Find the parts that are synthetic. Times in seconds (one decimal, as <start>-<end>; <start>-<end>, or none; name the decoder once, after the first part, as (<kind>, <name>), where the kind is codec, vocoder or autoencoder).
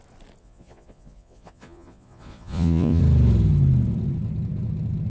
0.4-3.0 (vocoder, Vocos)